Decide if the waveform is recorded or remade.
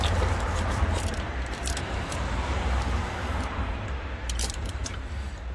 remade